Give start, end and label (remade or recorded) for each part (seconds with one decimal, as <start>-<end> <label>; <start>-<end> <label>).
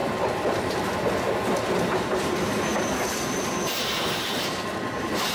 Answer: 0.0-5.3 recorded